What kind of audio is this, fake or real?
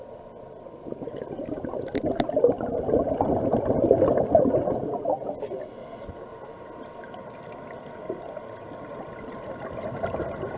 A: real